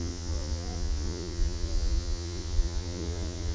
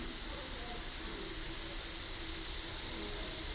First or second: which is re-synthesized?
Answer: first